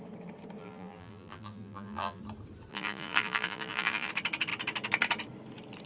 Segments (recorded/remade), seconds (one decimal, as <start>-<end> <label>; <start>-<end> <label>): 0.0-0.6 recorded; 0.6-2.2 remade; 2.2-2.7 recorded; 2.7-4.1 remade; 4.1-5.9 recorded